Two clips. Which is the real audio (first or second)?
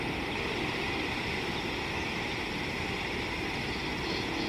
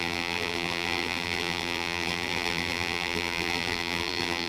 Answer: first